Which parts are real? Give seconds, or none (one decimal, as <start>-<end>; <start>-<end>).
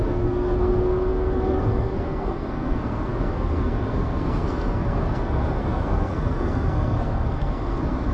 none